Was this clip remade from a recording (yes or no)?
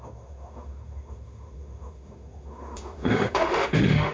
yes